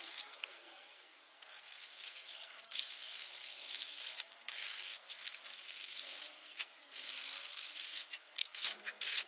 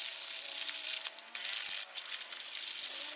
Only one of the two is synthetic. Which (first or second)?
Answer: first